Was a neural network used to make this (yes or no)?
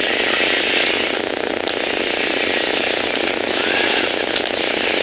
no